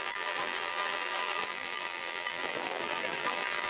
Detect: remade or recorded remade